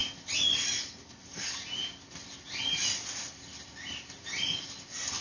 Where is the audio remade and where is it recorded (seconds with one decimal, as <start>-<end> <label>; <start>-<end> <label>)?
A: 0.0-5.2 recorded